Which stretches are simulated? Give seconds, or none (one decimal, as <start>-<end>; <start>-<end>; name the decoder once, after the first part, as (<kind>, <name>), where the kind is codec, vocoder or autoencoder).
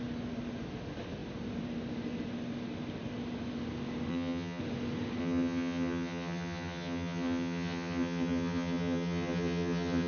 4.1-4.6 (vocoder, HiFi-GAN); 5.2-10.1